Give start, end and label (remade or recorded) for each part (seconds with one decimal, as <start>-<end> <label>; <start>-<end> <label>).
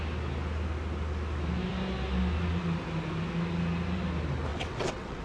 0.0-4.5 recorded; 4.5-5.2 remade